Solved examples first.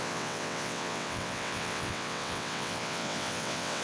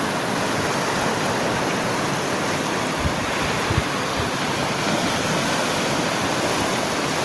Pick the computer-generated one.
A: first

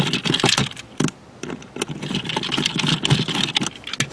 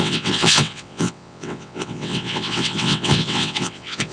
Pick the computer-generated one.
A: second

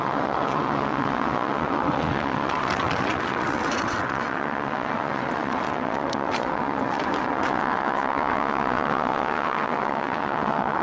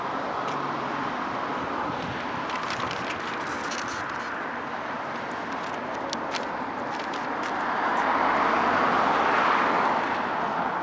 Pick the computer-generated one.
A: first